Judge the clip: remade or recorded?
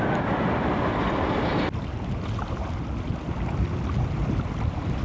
recorded